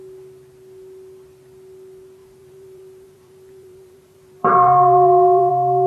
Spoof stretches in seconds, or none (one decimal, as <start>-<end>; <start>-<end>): 2.2-5.5